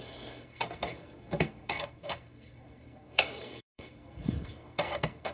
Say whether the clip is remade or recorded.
remade